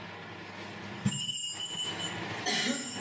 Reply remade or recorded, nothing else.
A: recorded